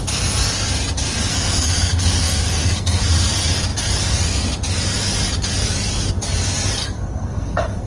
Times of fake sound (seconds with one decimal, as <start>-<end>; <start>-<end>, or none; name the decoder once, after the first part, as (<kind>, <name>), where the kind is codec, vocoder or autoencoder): 1.3-3.0 (codec, SNAC); 6.8-7.9